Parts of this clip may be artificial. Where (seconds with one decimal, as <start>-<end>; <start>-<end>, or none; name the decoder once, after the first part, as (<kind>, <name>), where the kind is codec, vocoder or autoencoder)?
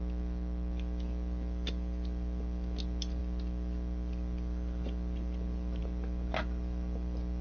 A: none